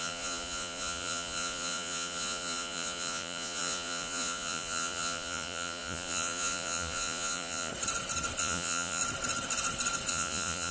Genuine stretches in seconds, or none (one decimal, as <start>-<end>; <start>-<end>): 7.7-8.4; 9.0-10.1